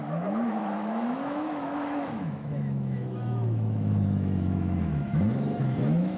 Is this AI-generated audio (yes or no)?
yes